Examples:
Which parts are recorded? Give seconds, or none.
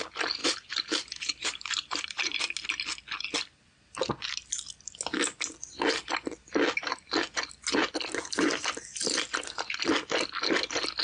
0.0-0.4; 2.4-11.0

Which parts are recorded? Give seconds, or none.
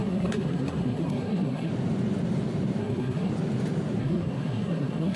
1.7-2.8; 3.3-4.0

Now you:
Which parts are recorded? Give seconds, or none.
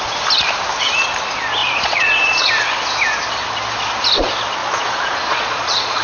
0.0-1.6; 2.5-4.6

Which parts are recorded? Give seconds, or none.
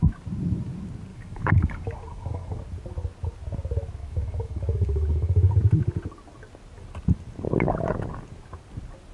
0.0-1.1; 2.6-4.0; 5.5-9.1